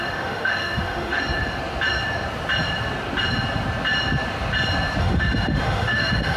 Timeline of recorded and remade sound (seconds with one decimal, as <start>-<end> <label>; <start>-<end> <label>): 0.0-1.2 remade; 1.2-5.0 recorded; 5.0-6.4 remade